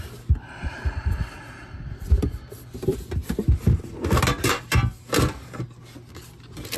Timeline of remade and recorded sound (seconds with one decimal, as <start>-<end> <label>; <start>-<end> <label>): 0.0-6.8 recorded